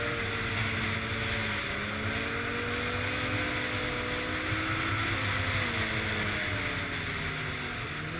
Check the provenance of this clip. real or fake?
real